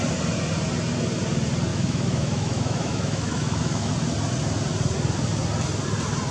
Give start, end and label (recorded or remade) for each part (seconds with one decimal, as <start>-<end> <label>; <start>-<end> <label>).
0.0-1.7 recorded; 1.7-3.9 remade; 3.9-6.3 recorded